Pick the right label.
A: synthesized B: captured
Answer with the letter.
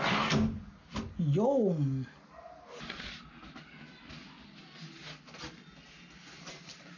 B